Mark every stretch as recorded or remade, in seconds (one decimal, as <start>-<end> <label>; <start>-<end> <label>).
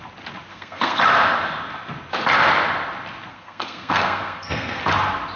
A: 0.0-0.5 recorded; 0.5-1.0 remade; 1.0-3.3 recorded; 3.3-4.8 remade; 4.8-5.4 recorded